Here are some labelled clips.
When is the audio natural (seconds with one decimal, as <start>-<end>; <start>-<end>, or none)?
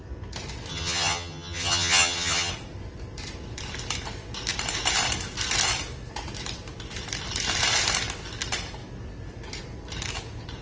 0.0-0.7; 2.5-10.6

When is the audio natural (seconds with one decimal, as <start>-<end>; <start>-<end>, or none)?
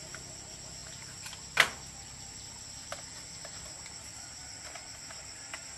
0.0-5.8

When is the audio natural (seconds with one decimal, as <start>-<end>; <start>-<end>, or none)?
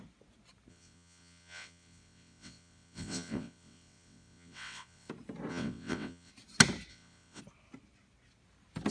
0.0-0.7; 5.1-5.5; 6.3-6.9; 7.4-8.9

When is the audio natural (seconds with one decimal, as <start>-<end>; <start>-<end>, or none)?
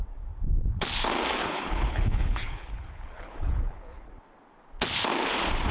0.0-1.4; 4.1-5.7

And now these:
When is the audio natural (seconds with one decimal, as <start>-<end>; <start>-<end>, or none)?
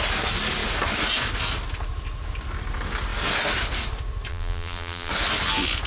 0.0-4.3; 5.1-5.9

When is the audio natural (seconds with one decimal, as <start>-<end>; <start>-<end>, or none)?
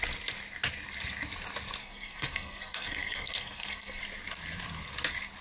0.0-1.8; 4.0-5.4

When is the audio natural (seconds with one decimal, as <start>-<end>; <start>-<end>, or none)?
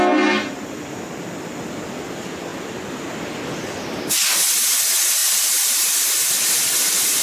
0.0-7.2